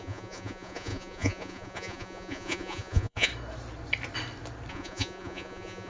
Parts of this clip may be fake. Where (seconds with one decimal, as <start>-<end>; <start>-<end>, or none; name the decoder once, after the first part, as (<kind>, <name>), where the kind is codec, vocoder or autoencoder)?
0.0-3.3 (vocoder, Vocos); 4.7-5.9